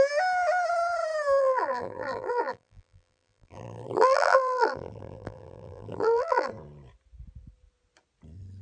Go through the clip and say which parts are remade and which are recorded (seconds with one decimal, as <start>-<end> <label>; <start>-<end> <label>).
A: 0.0-1.4 recorded; 1.4-6.5 remade; 6.5-8.6 recorded